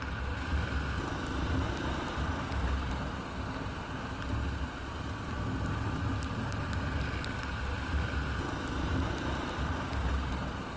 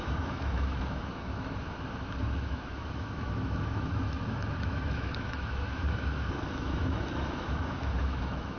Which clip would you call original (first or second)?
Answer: first